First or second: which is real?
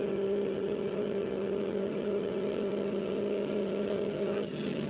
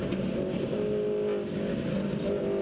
second